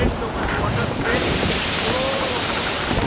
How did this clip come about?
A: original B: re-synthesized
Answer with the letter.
B